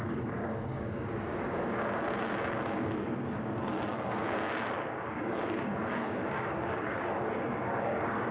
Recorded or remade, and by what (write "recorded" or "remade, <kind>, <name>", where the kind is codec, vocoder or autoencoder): remade, codec, DAC